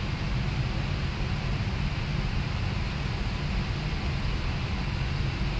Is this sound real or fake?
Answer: real